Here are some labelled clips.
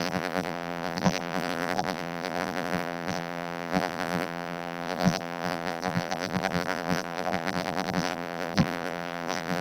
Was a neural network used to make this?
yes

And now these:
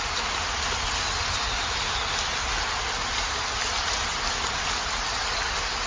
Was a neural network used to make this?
no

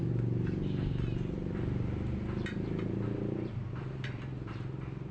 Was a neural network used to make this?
no